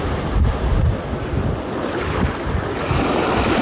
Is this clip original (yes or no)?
yes